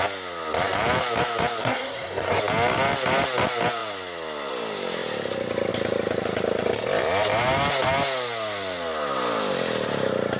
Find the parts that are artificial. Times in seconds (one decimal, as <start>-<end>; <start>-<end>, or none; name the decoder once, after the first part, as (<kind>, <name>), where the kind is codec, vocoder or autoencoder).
1.6-2.4 (codec, SNAC)